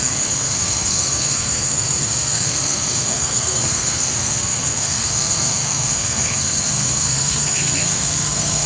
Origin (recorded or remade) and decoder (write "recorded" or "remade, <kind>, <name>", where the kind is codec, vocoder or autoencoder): remade, codec, SNAC